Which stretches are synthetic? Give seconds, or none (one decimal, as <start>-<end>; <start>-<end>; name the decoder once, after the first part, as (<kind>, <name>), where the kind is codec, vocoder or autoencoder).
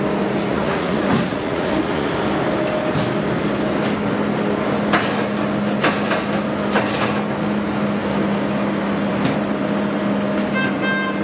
0.5-2.1 (vocoder, Vocos)